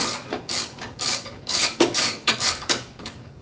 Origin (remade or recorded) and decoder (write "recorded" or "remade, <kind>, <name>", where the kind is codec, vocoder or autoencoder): remade, codec, DAC